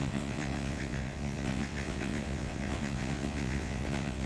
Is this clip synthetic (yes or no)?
yes